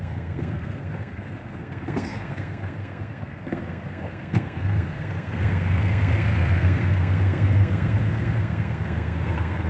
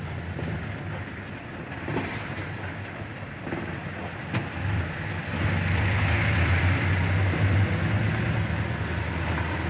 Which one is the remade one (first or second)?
first